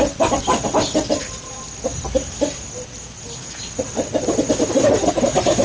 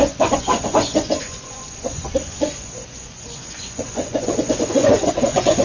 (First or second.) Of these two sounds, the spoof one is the second